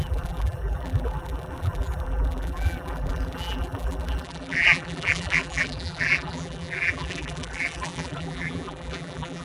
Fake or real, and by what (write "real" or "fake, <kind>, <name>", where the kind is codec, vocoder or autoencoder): fake, vocoder, BigVGAN v2